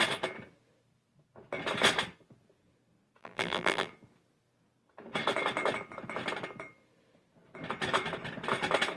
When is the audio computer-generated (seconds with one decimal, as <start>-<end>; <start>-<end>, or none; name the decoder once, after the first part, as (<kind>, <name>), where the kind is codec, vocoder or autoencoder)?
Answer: 3.2-3.9 (vocoder, BigVGAN v2)